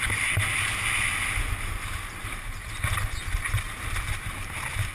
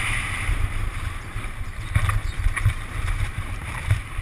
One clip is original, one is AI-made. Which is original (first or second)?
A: first